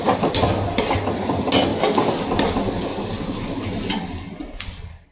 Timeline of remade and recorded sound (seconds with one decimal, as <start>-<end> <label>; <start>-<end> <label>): 0.0-5.1 recorded